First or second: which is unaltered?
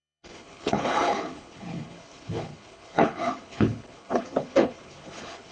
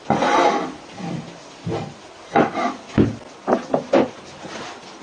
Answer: second